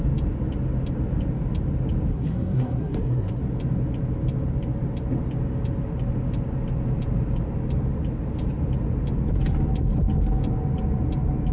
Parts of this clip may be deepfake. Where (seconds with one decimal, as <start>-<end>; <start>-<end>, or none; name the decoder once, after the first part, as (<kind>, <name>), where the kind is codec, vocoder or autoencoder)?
2.1-3.4 (codec, SNAC)